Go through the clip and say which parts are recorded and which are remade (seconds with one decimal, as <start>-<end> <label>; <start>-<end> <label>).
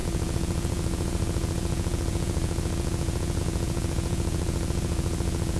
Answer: 0.0-5.6 remade